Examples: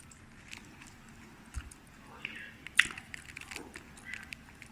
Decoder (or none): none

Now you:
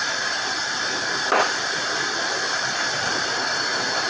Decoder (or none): vocoder, BigVGAN v2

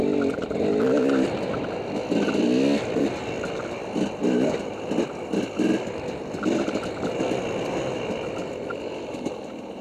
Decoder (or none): none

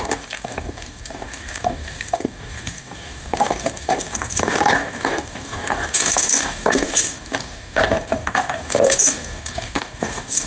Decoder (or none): codec, DAC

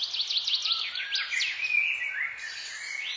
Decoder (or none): none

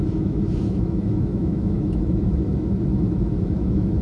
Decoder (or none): autoencoder, DAC-VAE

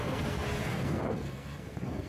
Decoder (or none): codec, SNAC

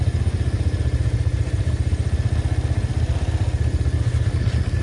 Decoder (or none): none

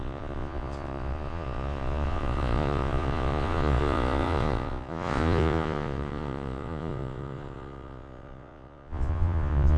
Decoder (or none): vocoder, Vocos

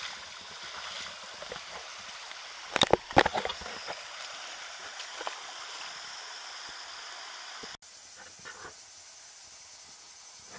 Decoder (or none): none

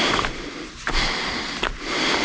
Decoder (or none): none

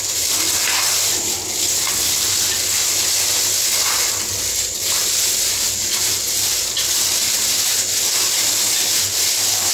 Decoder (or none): none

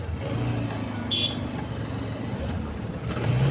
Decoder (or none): none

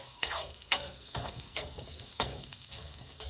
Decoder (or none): codec, SNAC